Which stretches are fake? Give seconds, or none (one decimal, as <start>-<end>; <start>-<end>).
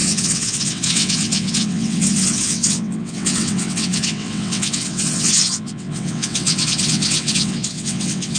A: 0.0-8.4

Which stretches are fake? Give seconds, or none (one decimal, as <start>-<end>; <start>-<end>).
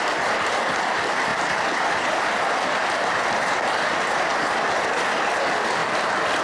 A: none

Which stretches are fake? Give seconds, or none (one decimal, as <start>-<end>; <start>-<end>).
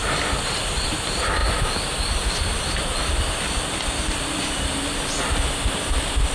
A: none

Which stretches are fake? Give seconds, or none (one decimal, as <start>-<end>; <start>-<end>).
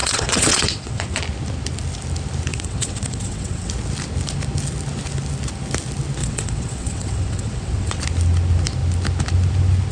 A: 0.0-1.2; 2.5-3.7; 6.2-8.0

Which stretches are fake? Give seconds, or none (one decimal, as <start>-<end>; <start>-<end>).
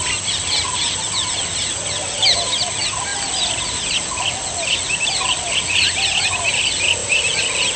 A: none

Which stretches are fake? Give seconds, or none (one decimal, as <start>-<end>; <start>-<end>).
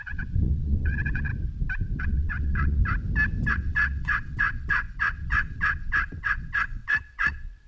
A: 0.0-1.3; 2.0-2.8; 3.5-7.7